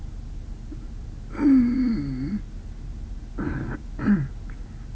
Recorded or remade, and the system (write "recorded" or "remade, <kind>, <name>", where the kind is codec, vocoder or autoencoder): recorded